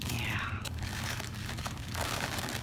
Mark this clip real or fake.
fake